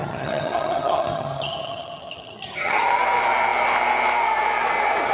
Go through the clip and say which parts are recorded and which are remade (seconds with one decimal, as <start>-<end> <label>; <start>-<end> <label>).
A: 0.0-3.0 remade; 3.0-5.1 recorded